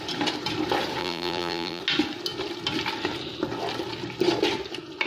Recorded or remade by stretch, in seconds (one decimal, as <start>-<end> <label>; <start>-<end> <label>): 0.0-1.0 recorded; 1.0-1.8 remade; 1.8-5.1 recorded